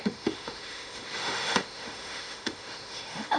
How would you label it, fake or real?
fake